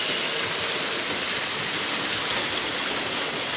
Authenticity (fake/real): real